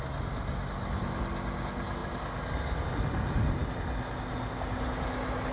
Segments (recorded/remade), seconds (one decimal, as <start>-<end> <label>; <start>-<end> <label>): 0.0-5.5 recorded